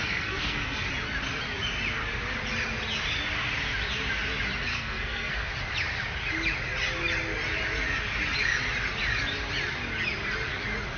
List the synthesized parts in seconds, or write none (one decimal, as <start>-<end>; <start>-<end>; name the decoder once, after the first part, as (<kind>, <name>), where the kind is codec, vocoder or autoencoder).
0.0-0.9 (codec, SNAC); 4.7-5.5